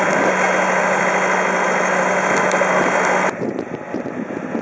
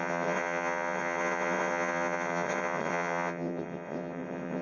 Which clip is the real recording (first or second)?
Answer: first